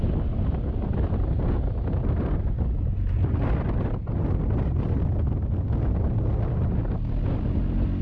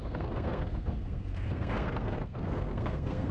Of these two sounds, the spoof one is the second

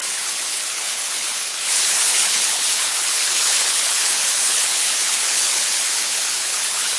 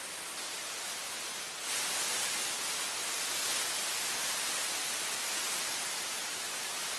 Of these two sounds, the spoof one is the first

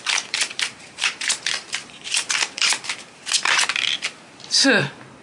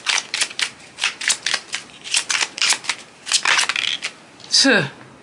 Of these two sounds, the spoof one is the first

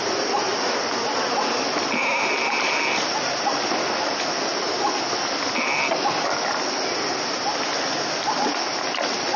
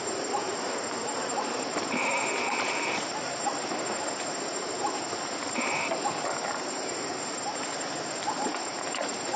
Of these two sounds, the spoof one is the second